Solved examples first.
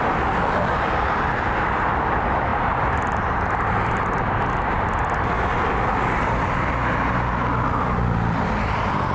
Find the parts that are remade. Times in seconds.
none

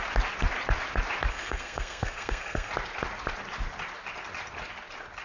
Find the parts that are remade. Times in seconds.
1.3-2.7 (codec, SNAC)

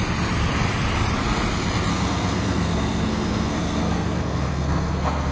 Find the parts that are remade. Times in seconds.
1.9-5.3 (codec, SNAC)

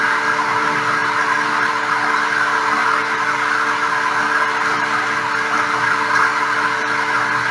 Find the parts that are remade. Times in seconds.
none